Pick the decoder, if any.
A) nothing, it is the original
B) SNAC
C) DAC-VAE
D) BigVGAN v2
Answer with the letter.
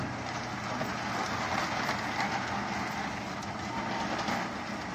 A